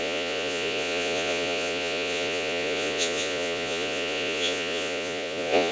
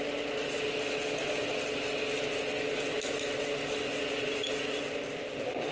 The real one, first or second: second